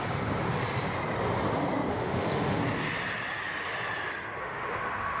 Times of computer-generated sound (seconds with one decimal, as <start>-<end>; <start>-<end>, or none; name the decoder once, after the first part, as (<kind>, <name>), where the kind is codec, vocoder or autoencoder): 1.9-2.6 (autoencoder, DAC-VAE); 4.4-5.2